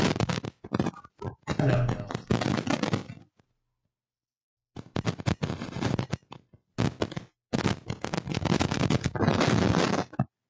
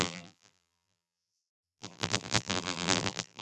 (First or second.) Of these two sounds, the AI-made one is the second